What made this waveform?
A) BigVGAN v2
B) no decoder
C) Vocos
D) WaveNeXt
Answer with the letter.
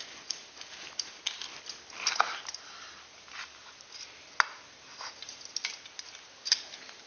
B